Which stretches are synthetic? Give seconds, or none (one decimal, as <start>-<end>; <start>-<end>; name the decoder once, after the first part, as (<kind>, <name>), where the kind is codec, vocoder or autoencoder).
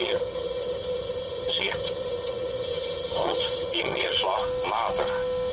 0.0-4.2 (vocoder, HiFi-GAN)